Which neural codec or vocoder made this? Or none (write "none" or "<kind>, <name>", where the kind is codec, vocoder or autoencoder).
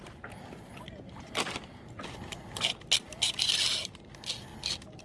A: none